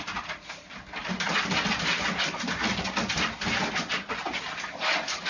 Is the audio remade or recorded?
recorded